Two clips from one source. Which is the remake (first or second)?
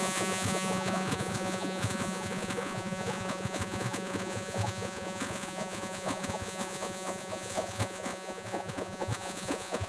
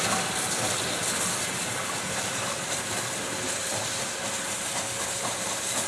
first